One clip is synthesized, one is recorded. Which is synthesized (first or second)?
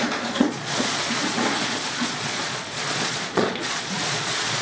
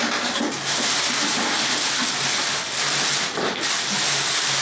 first